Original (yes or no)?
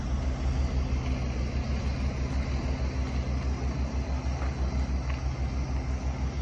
yes